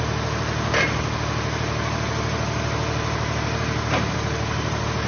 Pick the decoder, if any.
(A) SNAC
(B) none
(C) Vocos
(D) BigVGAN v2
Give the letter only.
B